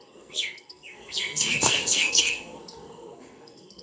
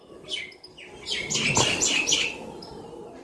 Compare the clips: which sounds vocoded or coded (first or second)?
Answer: first